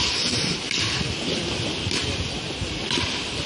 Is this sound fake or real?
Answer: real